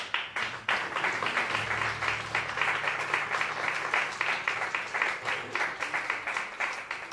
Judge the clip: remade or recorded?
recorded